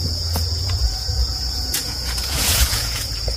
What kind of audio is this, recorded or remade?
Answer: remade